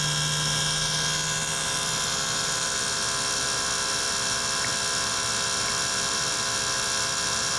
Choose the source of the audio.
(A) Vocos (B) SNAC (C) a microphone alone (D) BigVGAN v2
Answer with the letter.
C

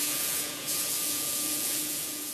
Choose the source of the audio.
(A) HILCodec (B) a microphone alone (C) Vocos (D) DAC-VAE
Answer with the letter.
C